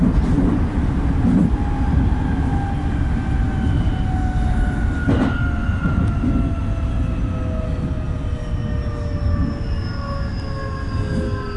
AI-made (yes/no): no